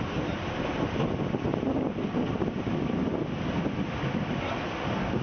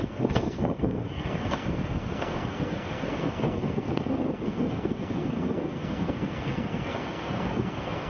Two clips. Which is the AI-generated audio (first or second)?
second